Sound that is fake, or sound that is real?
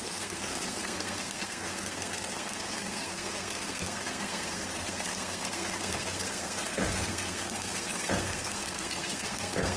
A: fake